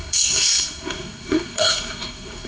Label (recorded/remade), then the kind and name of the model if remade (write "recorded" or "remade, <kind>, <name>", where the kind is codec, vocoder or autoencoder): remade, codec, SNAC